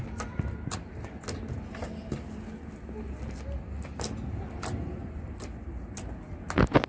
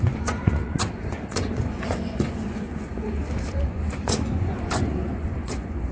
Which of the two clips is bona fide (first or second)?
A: first